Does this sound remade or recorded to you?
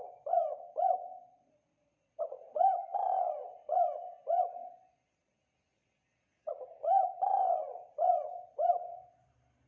remade